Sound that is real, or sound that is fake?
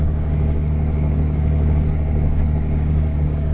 fake